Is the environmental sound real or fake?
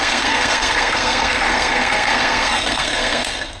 fake